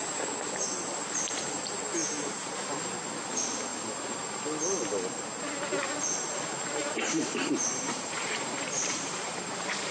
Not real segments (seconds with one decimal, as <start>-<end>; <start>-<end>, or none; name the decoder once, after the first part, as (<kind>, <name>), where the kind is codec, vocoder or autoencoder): 2.0-2.6 (vocoder, BigVGAN v2); 6.8-9.9